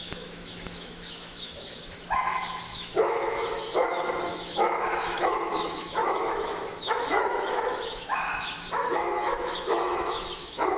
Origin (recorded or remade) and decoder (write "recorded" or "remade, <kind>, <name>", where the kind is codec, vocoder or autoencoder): remade, autoencoder, DAC-VAE